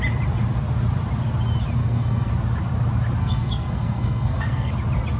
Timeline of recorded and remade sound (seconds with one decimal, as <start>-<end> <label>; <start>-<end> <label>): 0.0-1.8 recorded; 1.8-2.3 remade; 2.3-3.2 recorded; 3.2-4.7 remade; 4.7-5.2 recorded